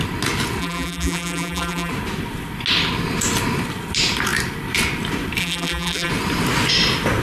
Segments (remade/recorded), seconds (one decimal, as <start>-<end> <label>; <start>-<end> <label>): 0.0-0.6 recorded; 0.6-1.9 remade; 1.9-5.4 recorded; 5.4-6.1 remade; 6.1-7.2 recorded